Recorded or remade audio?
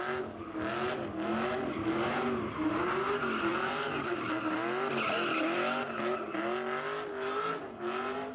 recorded